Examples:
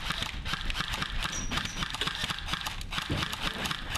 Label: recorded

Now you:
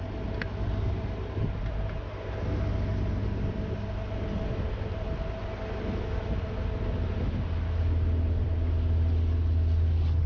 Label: recorded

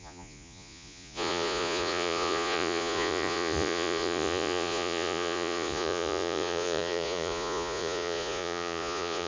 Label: remade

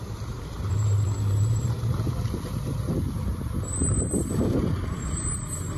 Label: remade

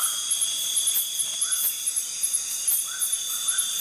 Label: recorded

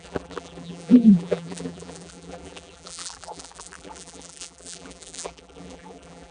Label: remade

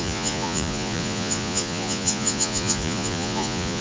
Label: remade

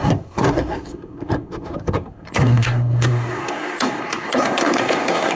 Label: remade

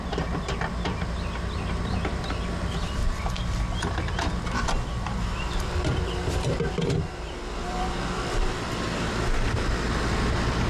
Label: remade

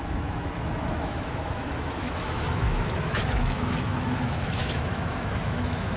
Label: remade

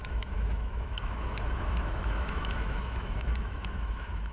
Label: remade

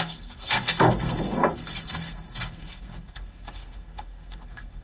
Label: remade